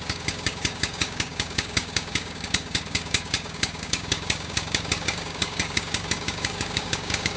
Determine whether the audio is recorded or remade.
remade